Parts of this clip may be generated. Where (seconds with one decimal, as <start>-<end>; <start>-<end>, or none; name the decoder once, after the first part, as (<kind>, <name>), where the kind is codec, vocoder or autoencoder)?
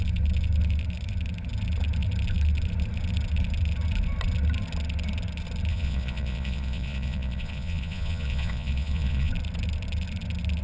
5.7-9.3 (vocoder, Vocos)